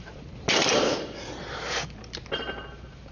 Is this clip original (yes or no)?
no